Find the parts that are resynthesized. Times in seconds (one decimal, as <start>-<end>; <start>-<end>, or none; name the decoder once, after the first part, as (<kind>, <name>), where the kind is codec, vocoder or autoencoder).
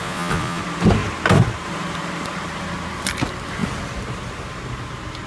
0.0-0.6 (vocoder, Vocos)